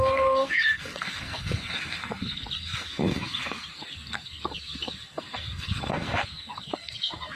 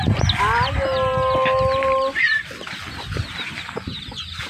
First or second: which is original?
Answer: second